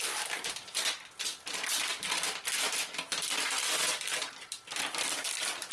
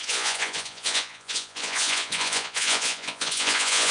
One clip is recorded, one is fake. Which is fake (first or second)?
second